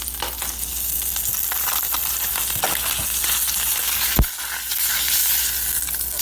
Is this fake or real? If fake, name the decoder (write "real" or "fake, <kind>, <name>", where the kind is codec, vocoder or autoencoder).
real